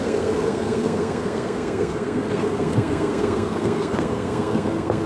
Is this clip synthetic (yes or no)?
yes